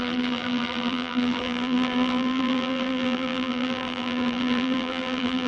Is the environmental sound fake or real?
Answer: fake